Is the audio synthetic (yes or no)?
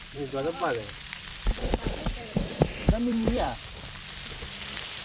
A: yes